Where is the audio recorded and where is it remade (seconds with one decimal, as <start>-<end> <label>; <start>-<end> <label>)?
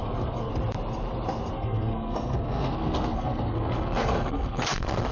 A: 0.0-0.5 remade; 0.5-1.5 recorded; 1.5-5.1 remade